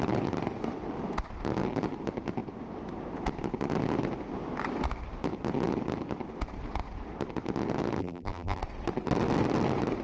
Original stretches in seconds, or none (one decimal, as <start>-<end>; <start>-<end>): 0.0-8.0; 8.6-10.0